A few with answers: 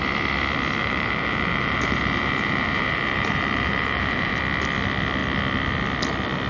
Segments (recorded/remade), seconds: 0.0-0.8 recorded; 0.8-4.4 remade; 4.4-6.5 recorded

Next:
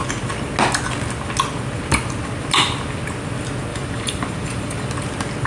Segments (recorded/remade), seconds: 0.0-3.7 recorded; 3.7-4.9 remade; 4.9-5.5 recorded

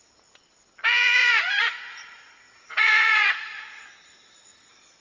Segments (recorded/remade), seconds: 0.0-1.2 recorded; 1.2-3.9 remade; 3.9-5.0 recorded

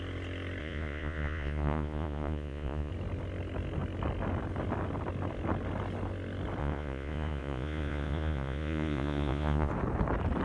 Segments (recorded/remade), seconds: 0.0-0.6 recorded; 0.6-2.9 remade; 2.9-6.6 recorded; 6.6-9.7 remade; 9.7-10.4 recorded

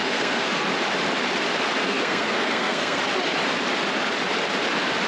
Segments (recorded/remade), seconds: 0.0-0.7 remade; 0.7-1.8 recorded; 1.8-3.0 remade; 3.0-5.1 recorded